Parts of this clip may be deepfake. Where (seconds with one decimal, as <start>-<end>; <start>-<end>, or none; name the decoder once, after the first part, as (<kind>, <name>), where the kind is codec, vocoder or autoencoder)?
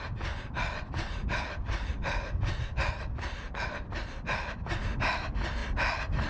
none